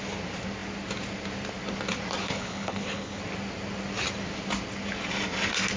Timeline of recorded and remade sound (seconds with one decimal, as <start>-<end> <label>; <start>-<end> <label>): 0.0-2.2 recorded; 2.2-3.2 remade; 3.2-5.8 recorded